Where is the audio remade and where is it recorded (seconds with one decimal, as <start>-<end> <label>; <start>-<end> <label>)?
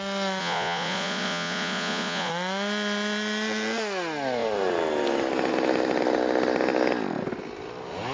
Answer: 0.0-0.4 recorded; 0.4-2.3 remade; 2.3-8.1 recorded